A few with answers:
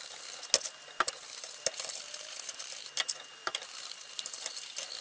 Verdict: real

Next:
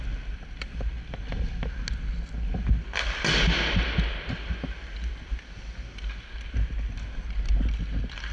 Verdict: real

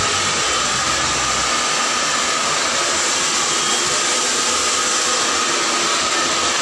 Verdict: real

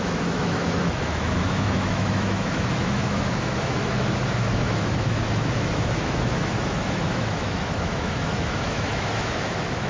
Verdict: fake